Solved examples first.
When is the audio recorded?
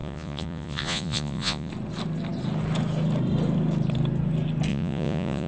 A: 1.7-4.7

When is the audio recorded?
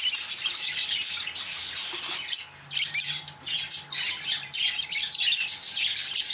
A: 0.0-6.3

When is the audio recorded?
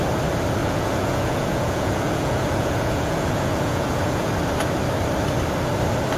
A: 0.0-0.6; 4.3-6.2